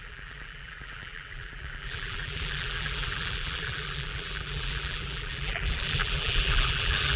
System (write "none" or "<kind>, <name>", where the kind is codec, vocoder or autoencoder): vocoder, BigVGAN v2